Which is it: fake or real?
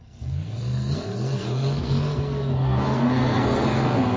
fake